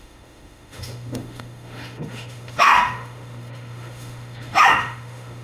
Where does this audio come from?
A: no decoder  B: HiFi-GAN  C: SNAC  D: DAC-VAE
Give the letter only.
D